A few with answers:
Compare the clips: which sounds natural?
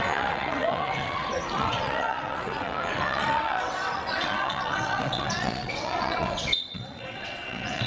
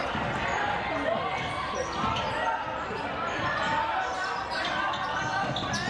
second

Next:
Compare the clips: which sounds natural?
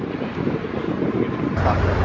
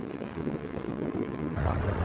first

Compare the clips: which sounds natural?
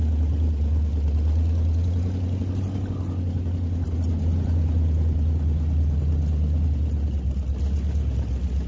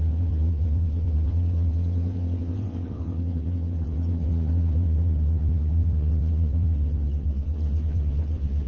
first